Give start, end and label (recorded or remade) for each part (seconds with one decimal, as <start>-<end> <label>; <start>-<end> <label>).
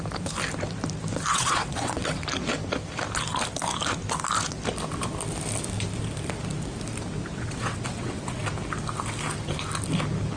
0.0-1.3 recorded; 1.3-2.2 remade; 2.2-7.3 recorded; 7.3-8.4 remade; 8.4-10.4 recorded